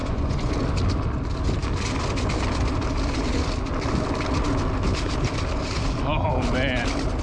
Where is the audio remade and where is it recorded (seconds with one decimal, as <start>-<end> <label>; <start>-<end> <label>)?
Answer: 0.0-0.5 remade; 0.5-7.2 recorded